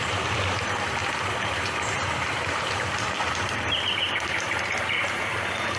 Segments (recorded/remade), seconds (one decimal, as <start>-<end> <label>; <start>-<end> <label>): 0.0-5.8 remade